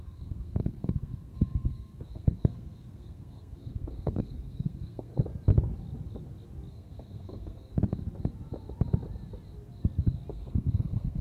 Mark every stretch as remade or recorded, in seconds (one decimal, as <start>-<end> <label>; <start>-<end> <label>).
0.0-5.1 remade; 5.1-6.7 recorded; 6.7-7.7 remade; 7.7-10.3 recorded; 10.3-11.2 remade